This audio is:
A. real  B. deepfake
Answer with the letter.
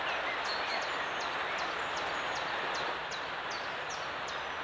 A